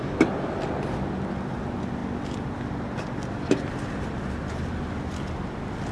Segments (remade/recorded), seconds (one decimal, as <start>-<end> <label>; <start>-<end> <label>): 0.0-5.9 recorded